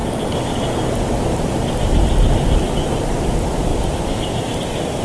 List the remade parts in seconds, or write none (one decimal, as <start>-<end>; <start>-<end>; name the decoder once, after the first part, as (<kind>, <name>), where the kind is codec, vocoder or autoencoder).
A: none